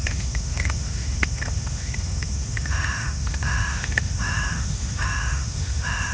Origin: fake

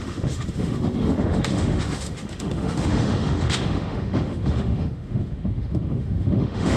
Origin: fake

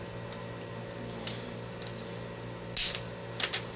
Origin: real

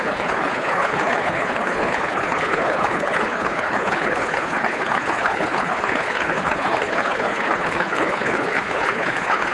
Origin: fake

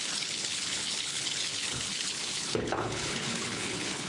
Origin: fake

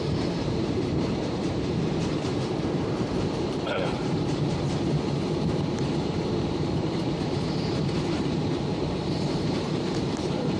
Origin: fake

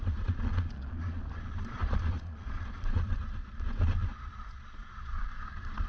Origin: fake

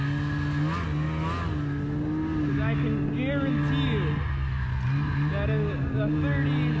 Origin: real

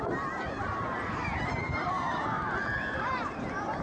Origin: fake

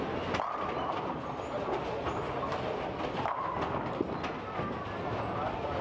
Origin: real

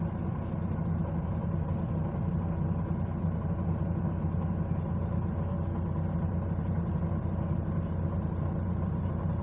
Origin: real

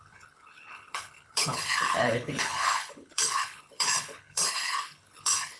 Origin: fake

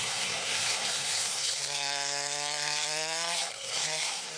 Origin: fake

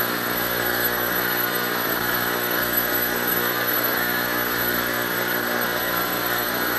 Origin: fake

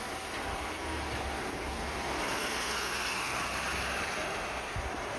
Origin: real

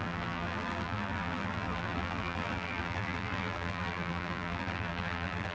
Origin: fake